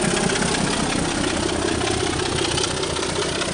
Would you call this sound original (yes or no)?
yes